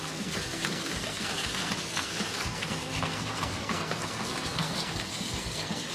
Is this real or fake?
fake